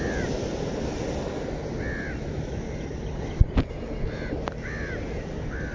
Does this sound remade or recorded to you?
recorded